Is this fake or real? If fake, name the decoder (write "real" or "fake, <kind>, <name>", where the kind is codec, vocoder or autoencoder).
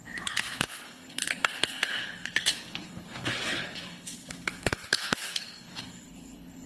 fake, codec, HILCodec